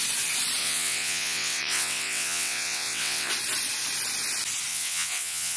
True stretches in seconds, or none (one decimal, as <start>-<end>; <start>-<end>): 0.0-0.6; 3.3-4.7